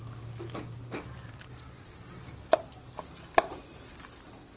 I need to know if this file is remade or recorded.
recorded